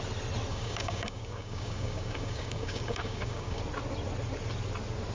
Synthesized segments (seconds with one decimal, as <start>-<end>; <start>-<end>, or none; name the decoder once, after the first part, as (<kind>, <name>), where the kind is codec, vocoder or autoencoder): 0.5-3.6 (codec, DAC)